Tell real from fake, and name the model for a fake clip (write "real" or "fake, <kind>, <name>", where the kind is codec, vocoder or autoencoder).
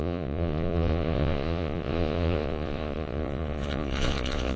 fake, vocoder, Vocos